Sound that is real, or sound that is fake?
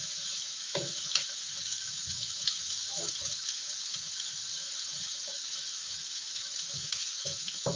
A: fake